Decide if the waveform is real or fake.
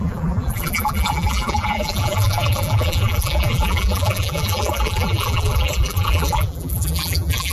fake